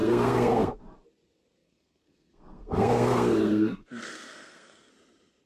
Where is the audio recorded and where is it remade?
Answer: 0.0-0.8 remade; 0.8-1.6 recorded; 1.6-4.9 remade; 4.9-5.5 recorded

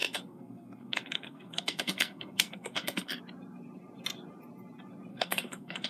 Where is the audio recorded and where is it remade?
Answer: 0.0-3.2 remade; 3.2-5.1 recorded; 5.1-5.9 remade

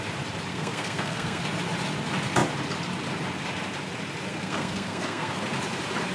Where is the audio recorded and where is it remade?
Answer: 0.0-0.5 recorded; 0.5-1.4 remade; 1.4-4.3 recorded; 4.3-5.4 remade; 5.4-6.1 recorded